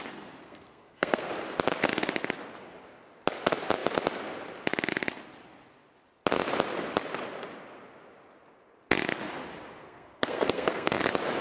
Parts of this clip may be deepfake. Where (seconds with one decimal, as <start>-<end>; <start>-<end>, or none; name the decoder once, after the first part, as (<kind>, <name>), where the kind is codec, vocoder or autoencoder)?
0.4-1.3 (codec, SNAC); 9.8-11.0